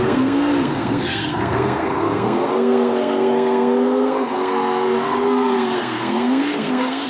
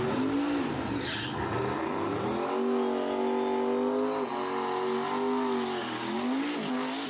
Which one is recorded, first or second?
second